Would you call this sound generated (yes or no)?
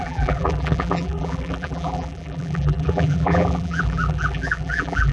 yes